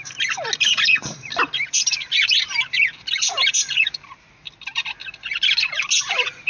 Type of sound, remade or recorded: recorded